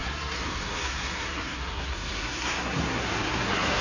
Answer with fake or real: fake